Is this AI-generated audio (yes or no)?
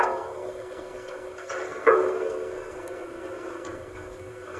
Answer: yes